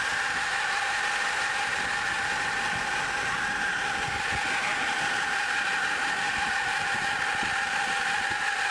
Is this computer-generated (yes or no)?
no